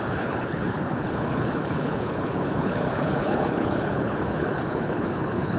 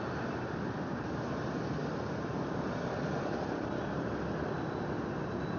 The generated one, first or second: first